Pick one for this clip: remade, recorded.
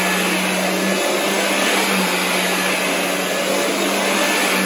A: recorded